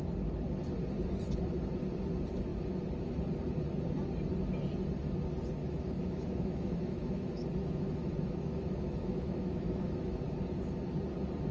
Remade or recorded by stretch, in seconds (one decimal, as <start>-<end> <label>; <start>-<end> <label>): 0.0-5.6 recorded; 5.6-10.4 remade; 10.4-11.5 recorded